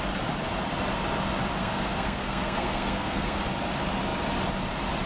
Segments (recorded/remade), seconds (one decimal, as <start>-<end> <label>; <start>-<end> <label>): 0.0-1.6 recorded; 1.6-3.4 remade; 3.4-5.1 recorded